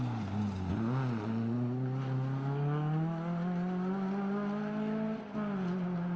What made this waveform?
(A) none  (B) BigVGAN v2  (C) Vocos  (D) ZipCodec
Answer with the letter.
A